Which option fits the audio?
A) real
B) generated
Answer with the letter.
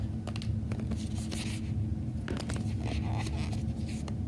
A